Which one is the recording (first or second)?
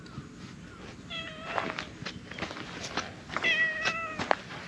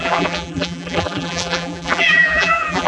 first